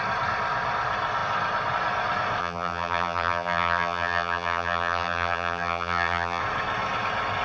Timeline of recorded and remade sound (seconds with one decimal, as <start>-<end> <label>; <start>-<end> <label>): 0.0-2.4 recorded; 2.4-6.4 remade; 6.4-7.4 recorded